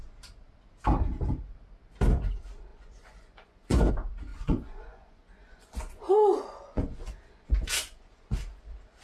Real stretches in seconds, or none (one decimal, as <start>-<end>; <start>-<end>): 0.0-2.7; 3.9-4.3; 8.6-9.0